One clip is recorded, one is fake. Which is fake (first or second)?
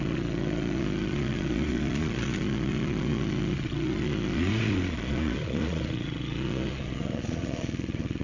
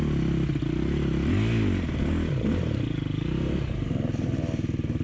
first